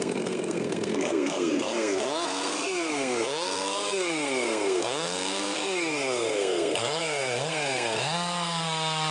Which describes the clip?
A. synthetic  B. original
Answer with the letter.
A